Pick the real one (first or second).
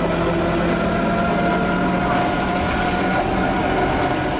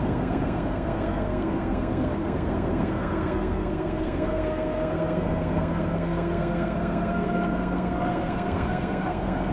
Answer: first